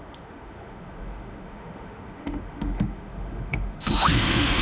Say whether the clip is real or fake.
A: fake